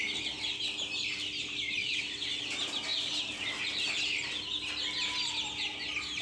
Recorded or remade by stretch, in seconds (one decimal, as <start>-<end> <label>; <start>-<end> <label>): 0.0-1.8 recorded; 1.8-2.4 remade; 2.4-6.2 recorded